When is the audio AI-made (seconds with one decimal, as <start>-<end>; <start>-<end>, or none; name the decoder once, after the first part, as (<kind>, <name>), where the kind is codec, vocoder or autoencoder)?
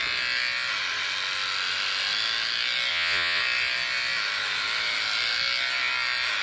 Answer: 2.9-3.4 (vocoder, Vocos)